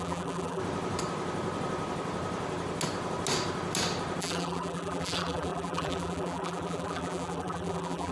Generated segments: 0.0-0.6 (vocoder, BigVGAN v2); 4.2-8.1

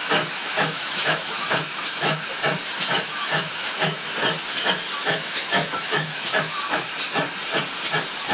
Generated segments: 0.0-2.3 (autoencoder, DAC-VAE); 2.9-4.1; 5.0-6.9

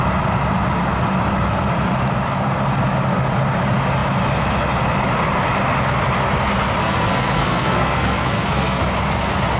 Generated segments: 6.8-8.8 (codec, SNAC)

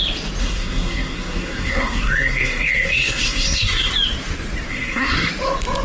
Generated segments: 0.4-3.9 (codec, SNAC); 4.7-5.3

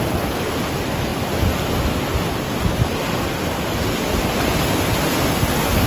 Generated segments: none

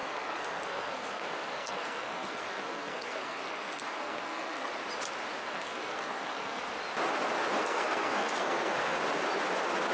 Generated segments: 0.0-4.7 (codec, SNAC); 5.4-6.6; 7.6-9.0